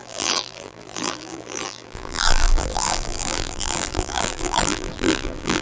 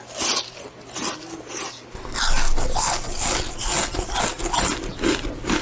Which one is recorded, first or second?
second